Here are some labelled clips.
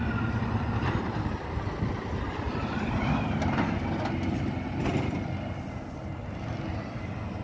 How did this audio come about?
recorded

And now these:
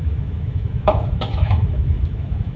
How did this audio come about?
remade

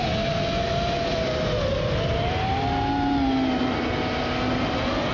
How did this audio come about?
recorded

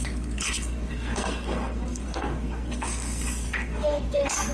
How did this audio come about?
remade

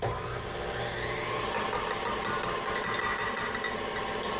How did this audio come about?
recorded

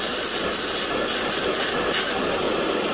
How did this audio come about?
remade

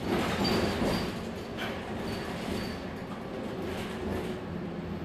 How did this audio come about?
recorded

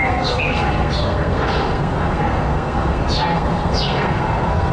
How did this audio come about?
remade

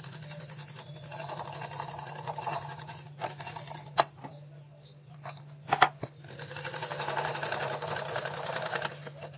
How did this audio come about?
recorded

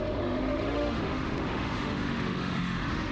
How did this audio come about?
remade